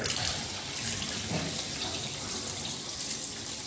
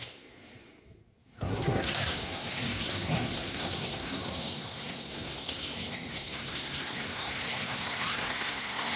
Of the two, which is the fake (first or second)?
second